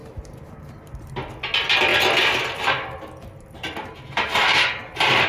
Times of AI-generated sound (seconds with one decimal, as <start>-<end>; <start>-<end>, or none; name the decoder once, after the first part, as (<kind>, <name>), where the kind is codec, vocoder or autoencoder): 0.0-1.1 (vocoder, BigVGAN v2); 1.9-5.3